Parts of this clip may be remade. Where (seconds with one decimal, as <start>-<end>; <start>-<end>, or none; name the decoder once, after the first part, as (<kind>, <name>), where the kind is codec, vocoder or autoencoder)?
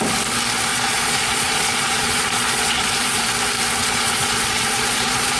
0.7-3.2 (vocoder, Vocos); 3.8-5.4